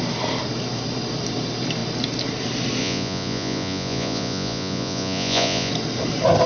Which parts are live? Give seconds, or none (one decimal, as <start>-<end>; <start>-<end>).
0.0-2.8; 5.7-6.5